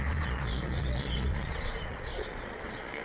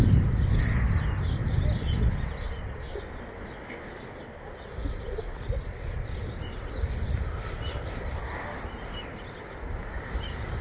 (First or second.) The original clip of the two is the second